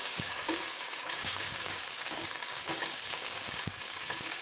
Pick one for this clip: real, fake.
fake